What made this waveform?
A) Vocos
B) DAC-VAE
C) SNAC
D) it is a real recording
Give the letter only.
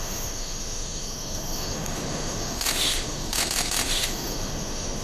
B